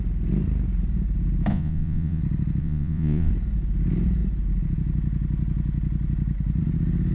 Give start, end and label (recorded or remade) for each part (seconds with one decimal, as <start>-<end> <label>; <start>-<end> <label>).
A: 0.0-1.5 recorded; 1.5-2.2 remade; 2.2-2.6 recorded; 2.6-3.3 remade; 3.3-7.1 recorded